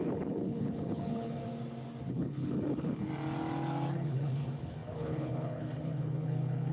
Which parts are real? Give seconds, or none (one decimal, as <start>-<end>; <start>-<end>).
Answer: 1.4-2.1; 3.1-3.9